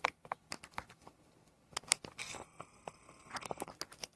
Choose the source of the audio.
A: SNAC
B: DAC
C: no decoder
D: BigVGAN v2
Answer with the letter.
C